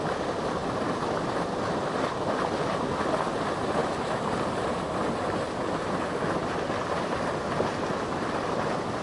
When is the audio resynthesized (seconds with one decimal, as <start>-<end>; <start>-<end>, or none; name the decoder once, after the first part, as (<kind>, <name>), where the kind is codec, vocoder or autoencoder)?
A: none